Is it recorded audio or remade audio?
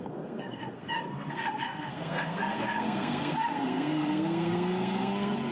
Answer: remade